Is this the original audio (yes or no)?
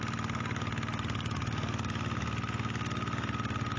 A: yes